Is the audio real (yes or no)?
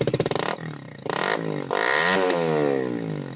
yes